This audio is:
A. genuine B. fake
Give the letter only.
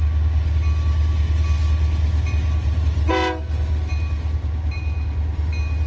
A